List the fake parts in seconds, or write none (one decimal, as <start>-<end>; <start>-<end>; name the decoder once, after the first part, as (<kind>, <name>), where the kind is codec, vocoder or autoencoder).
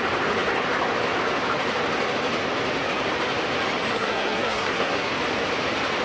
3.9-5.1 (codec, SNAC)